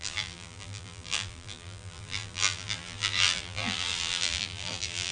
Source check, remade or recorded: remade